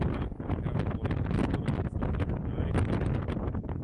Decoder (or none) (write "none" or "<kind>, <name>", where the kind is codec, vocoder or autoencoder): none